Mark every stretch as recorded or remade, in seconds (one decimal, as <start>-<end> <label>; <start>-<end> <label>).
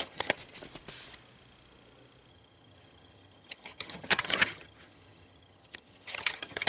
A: 0.0-0.4 remade; 0.4-2.3 recorded; 2.3-6.7 remade